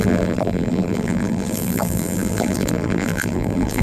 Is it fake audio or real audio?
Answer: fake